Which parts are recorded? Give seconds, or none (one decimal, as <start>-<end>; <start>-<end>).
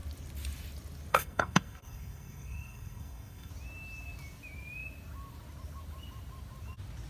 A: 0.0-1.1; 3.5-7.1